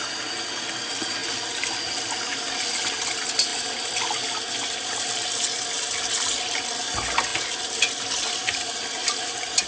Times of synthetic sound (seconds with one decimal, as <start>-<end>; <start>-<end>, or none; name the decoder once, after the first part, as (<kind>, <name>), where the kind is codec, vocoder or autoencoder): 1.2-1.9 (vocoder, BigVGAN v2)